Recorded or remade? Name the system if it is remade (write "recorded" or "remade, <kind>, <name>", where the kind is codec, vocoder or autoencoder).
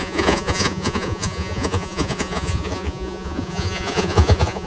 remade, vocoder, Vocos